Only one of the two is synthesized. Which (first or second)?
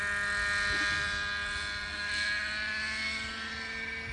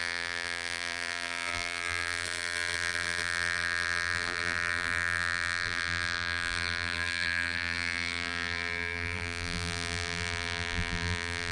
second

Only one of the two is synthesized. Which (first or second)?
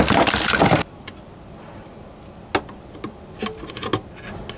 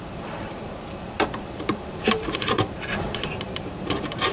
second